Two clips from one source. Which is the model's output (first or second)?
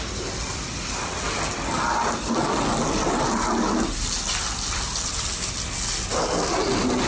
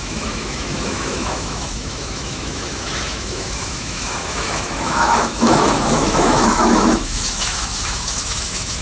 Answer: second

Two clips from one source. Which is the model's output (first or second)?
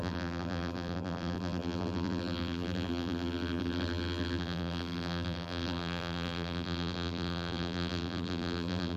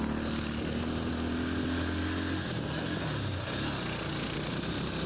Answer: first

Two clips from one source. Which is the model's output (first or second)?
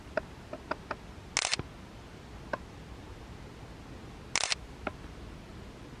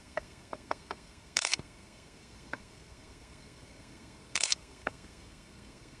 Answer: second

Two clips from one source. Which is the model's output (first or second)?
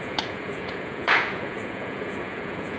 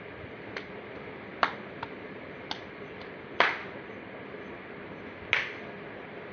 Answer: first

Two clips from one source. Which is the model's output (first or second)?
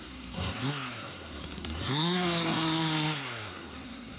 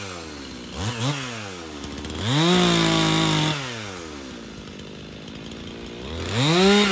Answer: first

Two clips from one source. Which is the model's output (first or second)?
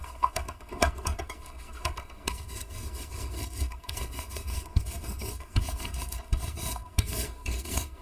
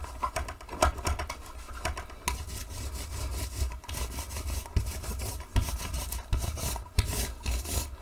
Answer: first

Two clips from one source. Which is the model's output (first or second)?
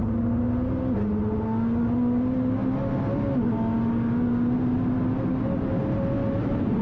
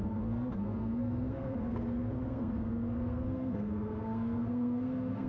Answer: second